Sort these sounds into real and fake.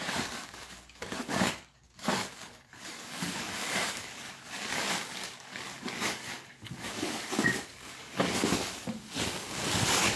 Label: fake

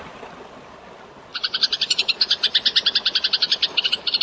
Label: real